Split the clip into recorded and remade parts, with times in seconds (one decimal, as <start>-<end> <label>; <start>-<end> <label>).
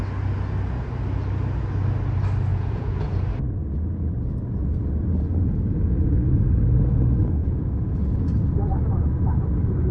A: 0.0-2.5 recorded; 2.5-3.1 remade; 3.1-7.4 recorded; 7.4-8.1 remade; 8.1-9.9 recorded